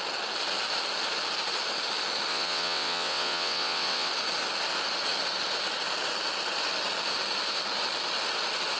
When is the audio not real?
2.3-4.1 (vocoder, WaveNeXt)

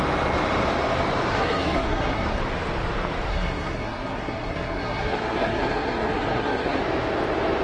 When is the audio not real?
1.3-2.4 (codec, SNAC); 3.3-6.8

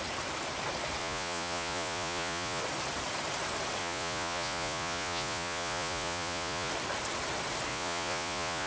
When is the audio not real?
1.0-2.6 (vocoder, Vocos); 3.8-6.7; 7.7-8.7

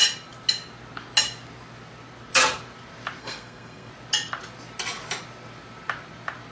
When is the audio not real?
3.2-3.9 (codec, SNAC)

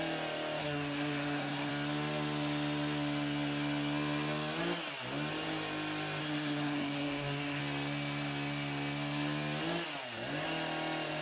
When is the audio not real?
0.6-1.7 (codec, SNAC); 6.2-7.6

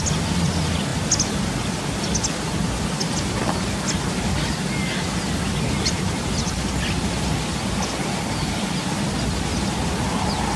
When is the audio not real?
none

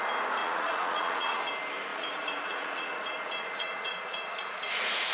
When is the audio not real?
0.4-1.5 (vocoder, Vocos); 1.9-5.1

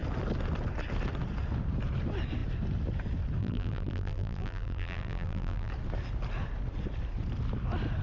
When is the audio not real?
3.4-5.7 (vocoder, BigVGAN v2)